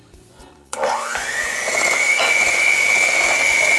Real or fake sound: fake